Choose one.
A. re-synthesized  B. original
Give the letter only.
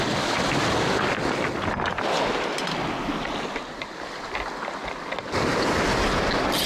B